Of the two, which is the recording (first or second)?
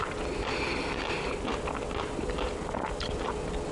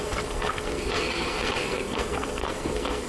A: first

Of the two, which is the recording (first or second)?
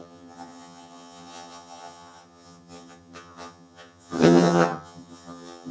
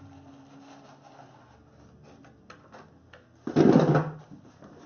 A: second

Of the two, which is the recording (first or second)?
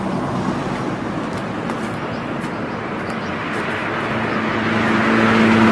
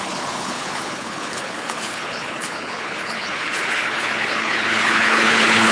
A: first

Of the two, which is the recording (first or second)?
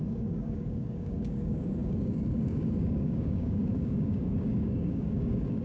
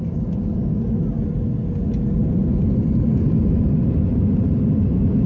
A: second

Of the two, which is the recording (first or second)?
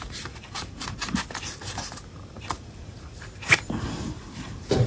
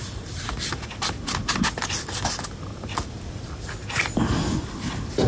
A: second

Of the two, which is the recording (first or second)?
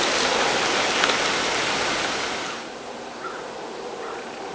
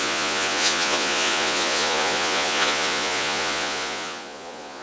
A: first